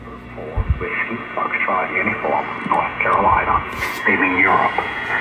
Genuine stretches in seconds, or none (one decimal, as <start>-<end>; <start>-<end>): 0.0-0.9; 1.4-2.9